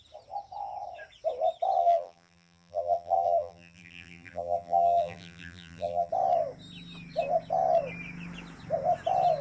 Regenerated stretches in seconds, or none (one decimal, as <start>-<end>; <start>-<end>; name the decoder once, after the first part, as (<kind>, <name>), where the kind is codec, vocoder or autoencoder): 1.8-6.1 (vocoder, BigVGAN v2)